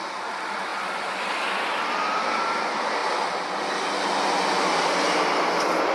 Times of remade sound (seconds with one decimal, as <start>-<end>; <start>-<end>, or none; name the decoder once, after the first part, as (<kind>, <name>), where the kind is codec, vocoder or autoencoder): none